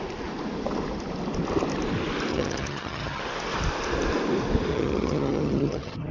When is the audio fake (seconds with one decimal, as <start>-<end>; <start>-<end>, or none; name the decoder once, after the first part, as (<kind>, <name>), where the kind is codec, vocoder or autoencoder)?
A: 2.3-3.2 (vocoder, HiFi-GAN); 4.7-6.1